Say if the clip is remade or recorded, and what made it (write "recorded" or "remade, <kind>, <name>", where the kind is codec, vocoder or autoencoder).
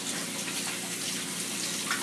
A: recorded